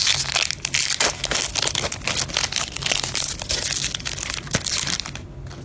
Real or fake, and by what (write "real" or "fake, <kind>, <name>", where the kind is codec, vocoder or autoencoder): real